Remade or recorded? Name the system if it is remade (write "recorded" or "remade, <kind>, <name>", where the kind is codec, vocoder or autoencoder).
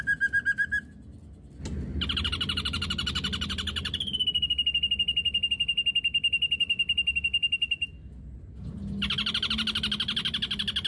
recorded